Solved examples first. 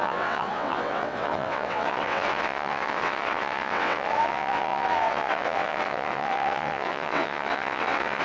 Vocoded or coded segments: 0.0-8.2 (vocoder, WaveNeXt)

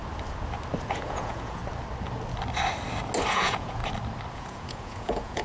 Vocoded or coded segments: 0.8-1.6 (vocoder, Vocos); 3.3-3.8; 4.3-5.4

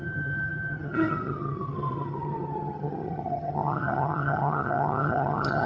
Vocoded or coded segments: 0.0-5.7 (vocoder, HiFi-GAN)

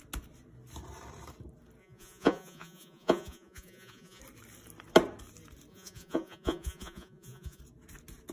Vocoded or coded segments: 1.8-4.2 (vocoder, Vocos); 5.7-7.6

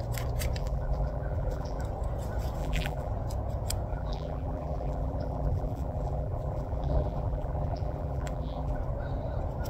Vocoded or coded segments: 0.6-1.8 (vocoder, BigVGAN v2); 2.6-3.1; 3.9-8.8

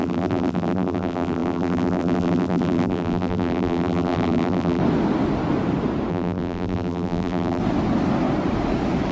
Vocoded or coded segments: 0.0-4.8 (vocoder, BigVGAN v2); 6.1-7.6